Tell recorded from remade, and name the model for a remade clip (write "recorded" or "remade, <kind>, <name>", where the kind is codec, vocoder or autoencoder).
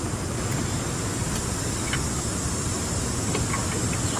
recorded